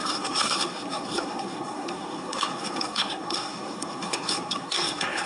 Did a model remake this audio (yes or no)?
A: yes